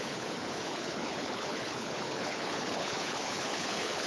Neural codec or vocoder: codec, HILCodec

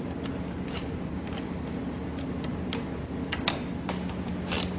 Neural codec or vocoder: none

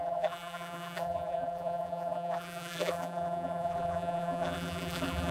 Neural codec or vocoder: vocoder, BigVGAN v2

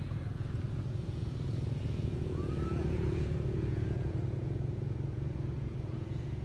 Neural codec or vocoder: vocoder, Vocos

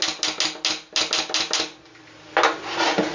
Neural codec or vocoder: none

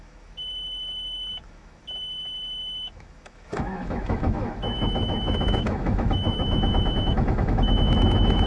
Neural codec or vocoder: autoencoder, DAC-VAE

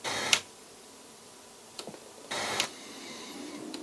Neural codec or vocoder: vocoder, BigVGAN v2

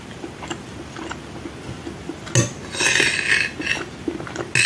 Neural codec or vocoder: none